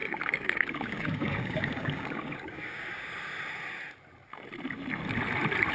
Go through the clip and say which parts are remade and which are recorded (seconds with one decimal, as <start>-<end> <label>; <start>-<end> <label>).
0.0-3.4 remade; 3.4-5.7 recorded